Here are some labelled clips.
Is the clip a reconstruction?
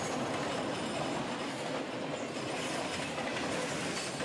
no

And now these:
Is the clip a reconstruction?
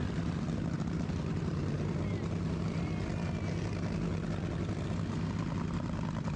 no